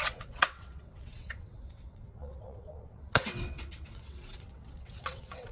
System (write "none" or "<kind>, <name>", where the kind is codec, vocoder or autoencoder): vocoder, WaveNeXt